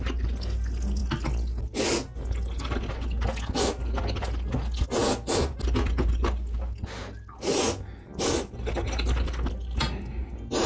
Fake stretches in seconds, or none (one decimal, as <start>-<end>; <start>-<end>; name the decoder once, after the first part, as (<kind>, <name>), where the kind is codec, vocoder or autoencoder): none